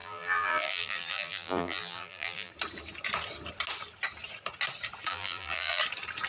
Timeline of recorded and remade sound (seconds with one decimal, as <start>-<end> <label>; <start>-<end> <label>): 0.0-2.5 remade; 2.5-5.1 recorded; 5.1-5.8 remade; 5.8-6.3 recorded